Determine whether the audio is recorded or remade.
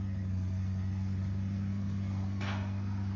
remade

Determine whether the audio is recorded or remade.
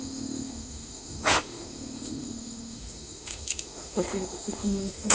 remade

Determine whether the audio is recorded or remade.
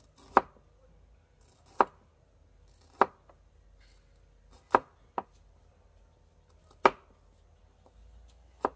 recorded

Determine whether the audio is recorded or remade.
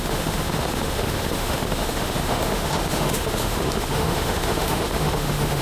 remade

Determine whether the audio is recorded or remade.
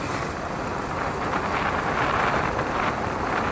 recorded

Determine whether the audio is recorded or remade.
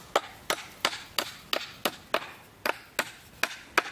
recorded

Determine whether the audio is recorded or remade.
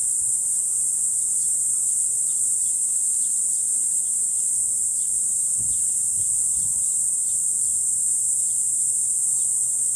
recorded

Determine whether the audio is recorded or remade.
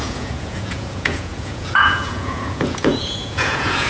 remade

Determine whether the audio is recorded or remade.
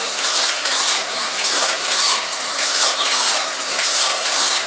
remade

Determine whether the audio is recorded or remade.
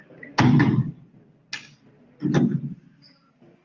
recorded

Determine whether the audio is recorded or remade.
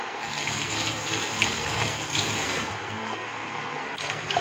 remade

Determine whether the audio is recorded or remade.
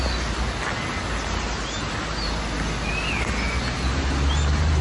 recorded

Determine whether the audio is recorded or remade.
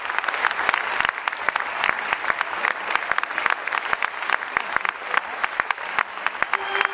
recorded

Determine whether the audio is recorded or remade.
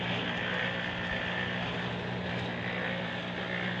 recorded